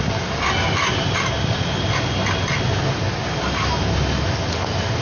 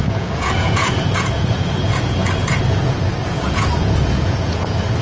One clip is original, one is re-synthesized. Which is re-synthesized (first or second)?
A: second